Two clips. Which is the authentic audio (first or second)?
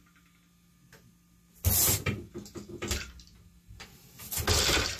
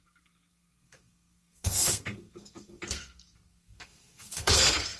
first